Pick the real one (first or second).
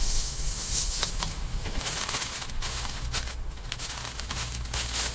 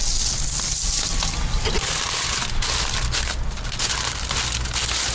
second